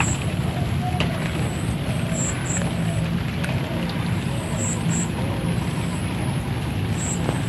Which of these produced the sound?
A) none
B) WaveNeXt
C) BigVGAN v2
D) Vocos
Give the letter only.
A